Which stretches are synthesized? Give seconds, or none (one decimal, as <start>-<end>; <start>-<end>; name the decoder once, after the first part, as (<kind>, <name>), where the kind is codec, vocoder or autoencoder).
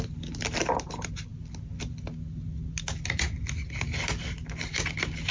none